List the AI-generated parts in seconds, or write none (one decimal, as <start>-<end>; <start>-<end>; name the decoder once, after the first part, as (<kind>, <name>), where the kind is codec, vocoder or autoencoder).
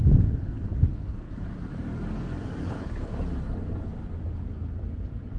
0.7-1.3 (codec, HILCodec); 2.6-3.2